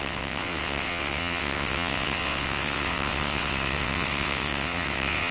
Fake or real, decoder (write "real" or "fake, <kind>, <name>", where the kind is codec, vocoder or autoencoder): fake, vocoder, WaveNeXt